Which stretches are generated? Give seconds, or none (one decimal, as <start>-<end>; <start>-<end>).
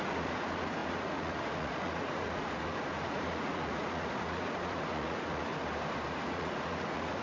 0.0-5.5; 6.1-7.2